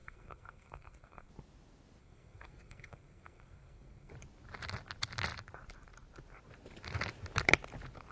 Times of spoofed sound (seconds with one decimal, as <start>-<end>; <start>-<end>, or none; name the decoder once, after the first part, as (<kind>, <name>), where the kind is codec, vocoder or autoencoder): 0.0-1.3 (codec, SNAC); 2.0-4.1